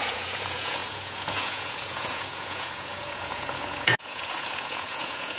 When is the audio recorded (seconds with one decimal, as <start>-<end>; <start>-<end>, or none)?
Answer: none